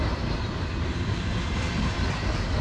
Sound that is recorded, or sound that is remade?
remade